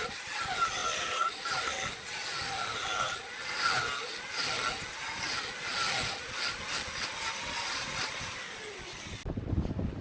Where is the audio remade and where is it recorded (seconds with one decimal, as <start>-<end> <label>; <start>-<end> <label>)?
0.0-10.0 recorded